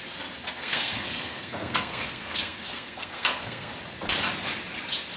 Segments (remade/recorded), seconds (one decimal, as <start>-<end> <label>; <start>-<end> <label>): 0.0-0.6 recorded; 0.6-3.7 remade; 3.7-5.2 recorded